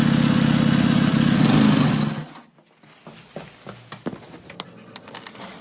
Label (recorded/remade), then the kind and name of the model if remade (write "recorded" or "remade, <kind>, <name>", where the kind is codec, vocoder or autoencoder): recorded